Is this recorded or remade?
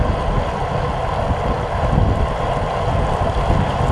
recorded